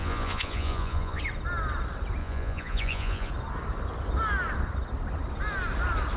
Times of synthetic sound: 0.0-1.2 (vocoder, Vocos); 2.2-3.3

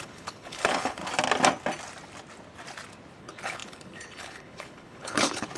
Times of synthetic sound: 0.0-1.0 (codec, HILCodec); 3.2-5.6

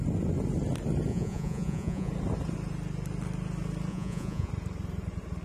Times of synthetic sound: 1.1-2.1 (vocoder, Vocos); 3.9-4.5